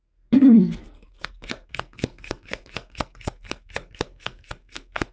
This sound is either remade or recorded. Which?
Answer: remade